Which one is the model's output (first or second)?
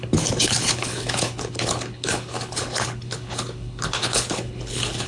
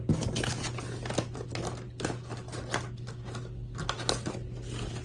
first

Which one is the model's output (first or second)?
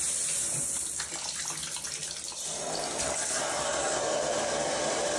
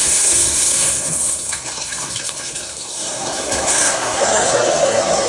second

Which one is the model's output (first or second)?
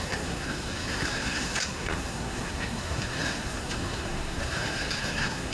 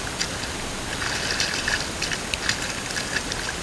first